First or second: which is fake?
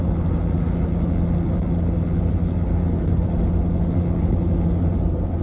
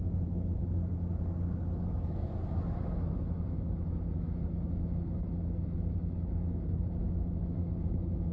second